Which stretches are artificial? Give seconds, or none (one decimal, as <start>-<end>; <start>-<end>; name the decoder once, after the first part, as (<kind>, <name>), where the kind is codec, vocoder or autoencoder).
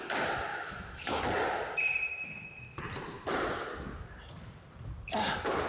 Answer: 0.5-1.2 (autoencoder, DAC-VAE); 2.1-2.8